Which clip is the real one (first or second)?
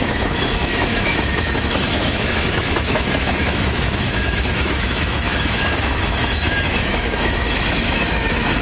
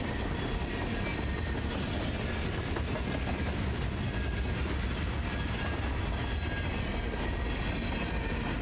second